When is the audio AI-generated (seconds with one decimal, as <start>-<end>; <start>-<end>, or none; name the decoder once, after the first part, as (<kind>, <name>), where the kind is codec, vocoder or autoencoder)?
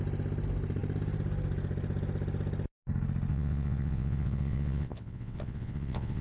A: 3.3-6.2 (vocoder, WaveNeXt)